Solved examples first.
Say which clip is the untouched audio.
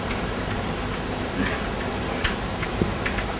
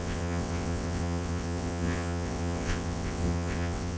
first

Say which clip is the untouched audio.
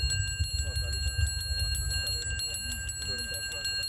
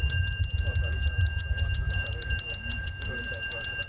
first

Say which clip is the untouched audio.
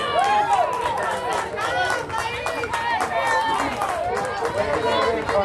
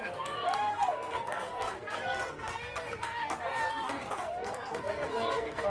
first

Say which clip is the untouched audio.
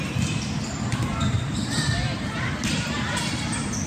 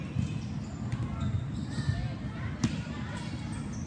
second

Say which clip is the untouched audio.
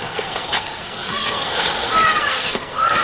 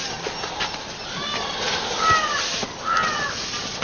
second